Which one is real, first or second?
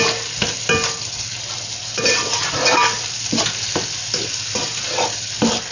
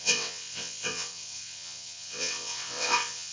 first